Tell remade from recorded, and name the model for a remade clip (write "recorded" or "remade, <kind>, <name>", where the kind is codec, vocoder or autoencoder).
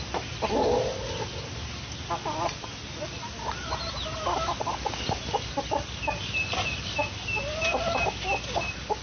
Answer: recorded